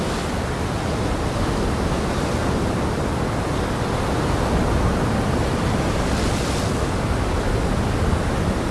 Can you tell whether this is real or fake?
real